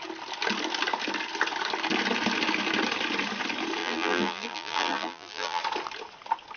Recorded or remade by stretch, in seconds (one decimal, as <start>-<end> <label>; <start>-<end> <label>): 0.0-3.8 recorded; 3.8-5.6 remade; 5.6-6.6 recorded